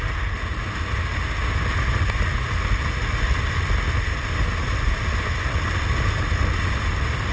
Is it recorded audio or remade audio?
recorded